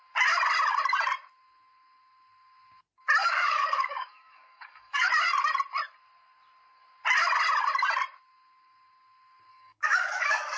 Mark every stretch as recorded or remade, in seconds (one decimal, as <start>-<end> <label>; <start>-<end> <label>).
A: 0.0-3.2 recorded; 3.2-5.1 remade; 5.1-9.5 recorded; 9.5-10.6 remade

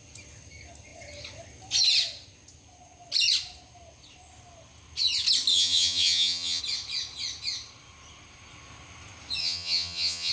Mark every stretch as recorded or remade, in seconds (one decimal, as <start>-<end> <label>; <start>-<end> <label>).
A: 0.0-5.5 recorded; 5.5-6.6 remade; 6.6-9.4 recorded; 9.4-10.3 remade

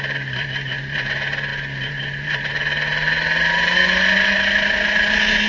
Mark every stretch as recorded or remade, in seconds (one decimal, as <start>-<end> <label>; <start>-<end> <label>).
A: 0.0-5.5 recorded

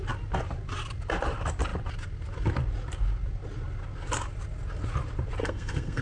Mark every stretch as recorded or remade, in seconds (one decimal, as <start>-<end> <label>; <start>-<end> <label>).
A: 0.0-5.4 recorded; 5.4-6.0 remade

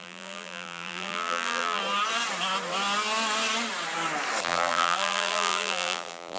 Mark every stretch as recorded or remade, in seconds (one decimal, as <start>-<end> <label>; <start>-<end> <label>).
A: 0.0-1.8 remade; 1.8-4.4 recorded; 4.4-6.4 remade